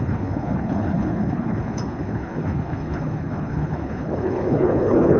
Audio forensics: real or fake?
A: fake